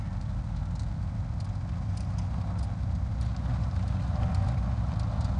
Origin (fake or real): real